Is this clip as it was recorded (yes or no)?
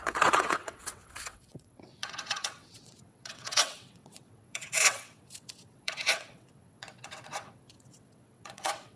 no